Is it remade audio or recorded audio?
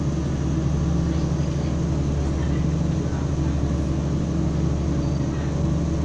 recorded